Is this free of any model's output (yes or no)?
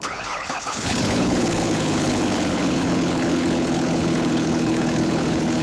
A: no